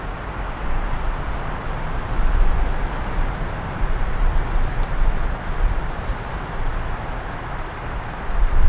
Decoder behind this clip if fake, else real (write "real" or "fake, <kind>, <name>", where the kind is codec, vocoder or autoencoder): real